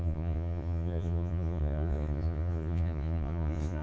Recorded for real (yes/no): no